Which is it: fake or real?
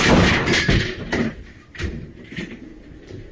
fake